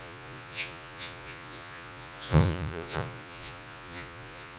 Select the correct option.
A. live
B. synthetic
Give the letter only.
B